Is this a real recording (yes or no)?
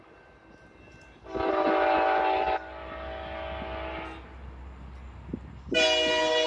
yes